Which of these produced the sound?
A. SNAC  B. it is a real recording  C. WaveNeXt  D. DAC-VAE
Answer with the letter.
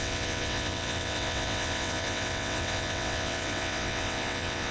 C